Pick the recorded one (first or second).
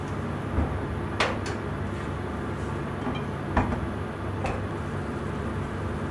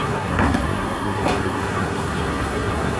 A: first